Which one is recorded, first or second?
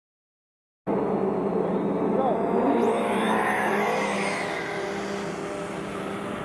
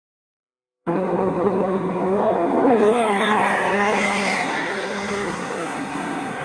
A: first